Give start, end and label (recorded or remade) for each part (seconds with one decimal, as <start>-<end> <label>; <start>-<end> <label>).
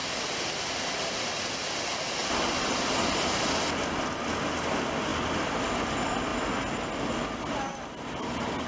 0.0-8.7 recorded